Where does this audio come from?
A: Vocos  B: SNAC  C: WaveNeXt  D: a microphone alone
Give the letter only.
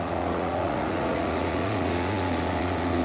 A